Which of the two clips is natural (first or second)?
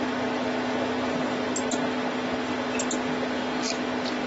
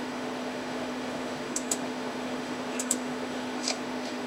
first